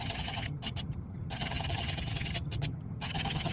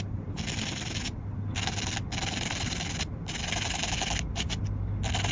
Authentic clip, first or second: second